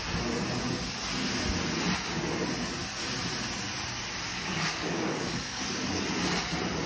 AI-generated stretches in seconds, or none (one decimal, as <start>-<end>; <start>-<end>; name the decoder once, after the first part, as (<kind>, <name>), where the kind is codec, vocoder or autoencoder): 4.3-6.0 (codec, DAC)

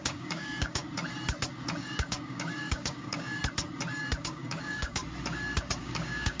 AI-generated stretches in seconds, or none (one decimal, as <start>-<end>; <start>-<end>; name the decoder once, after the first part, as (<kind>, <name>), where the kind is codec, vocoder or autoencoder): 0.0-0.8 (codec, DAC); 1.8-3.4; 4.2-5.0; 5.8-6.4

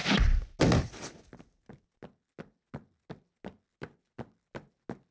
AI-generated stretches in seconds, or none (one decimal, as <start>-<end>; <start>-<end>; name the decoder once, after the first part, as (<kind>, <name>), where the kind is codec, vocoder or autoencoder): none